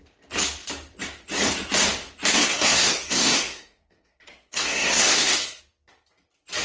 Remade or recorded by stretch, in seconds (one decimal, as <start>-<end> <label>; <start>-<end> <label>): 0.0-2.3 recorded; 2.3-5.6 remade; 5.6-6.6 recorded

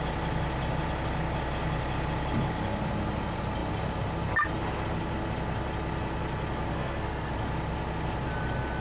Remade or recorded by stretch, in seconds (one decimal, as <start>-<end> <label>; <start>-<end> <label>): 0.0-6.7 recorded; 6.7-7.3 remade; 7.3-8.8 recorded

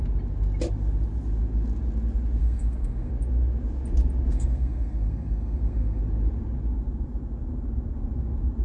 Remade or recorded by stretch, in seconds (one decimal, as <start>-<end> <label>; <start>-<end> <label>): 0.0-2.4 recorded; 2.4-3.1 remade; 3.1-4.3 recorded; 4.3-6.0 remade; 6.0-8.6 recorded

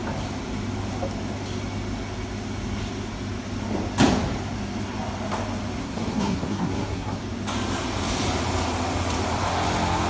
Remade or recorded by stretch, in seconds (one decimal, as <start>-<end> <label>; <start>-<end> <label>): 0.0-5.8 recorded; 5.8-7.2 remade; 7.2-10.1 recorded

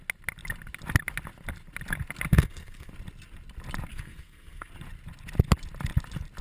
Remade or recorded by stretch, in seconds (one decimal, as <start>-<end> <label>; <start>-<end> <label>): 0.0-2.3 recorded; 2.3-2.9 remade; 2.9-3.9 recorded; 3.9-4.7 remade; 4.7-6.4 recorded

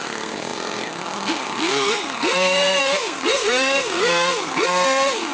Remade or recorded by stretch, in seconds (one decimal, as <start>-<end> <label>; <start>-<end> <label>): 0.0-5.3 remade